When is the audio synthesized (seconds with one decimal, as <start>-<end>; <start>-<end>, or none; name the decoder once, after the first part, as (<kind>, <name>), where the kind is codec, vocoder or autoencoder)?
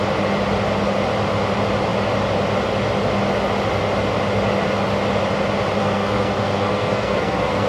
5.8-7.7 (codec, SNAC)